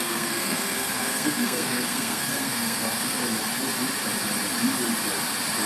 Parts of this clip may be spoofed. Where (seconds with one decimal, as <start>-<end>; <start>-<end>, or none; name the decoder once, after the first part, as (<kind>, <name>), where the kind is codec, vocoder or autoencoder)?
0.0-3.2 (codec, SNAC)